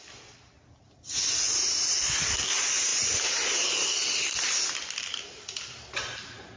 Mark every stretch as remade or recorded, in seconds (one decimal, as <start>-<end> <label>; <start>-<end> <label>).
0.0-6.6 recorded

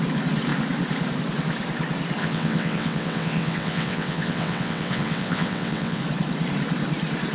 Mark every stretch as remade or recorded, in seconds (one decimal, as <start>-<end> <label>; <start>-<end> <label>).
0.0-2.2 recorded; 2.2-6.0 remade; 6.0-7.3 recorded

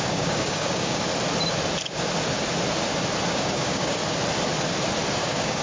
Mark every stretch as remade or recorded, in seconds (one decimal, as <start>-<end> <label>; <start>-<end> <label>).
0.0-1.1 remade; 1.1-3.3 recorded; 3.3-4.0 remade; 4.0-5.1 recorded; 5.1-5.6 remade

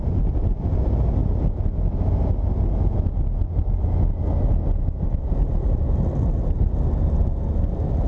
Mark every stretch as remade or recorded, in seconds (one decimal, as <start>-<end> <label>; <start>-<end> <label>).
0.0-8.1 recorded

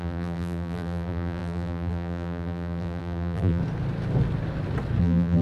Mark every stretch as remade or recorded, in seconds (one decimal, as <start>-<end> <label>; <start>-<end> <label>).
0.0-3.6 remade; 3.6-5.0 recorded; 5.0-5.4 remade